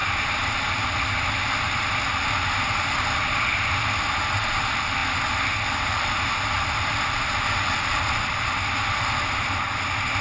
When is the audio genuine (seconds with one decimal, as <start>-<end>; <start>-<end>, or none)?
0.0-10.2